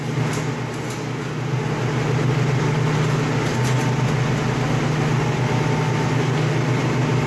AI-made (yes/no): no